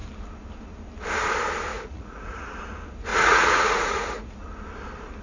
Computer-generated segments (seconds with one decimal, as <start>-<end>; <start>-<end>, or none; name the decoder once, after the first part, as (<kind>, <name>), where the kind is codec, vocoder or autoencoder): 1.7-2.4 (vocoder, Vocos); 3.1-4.4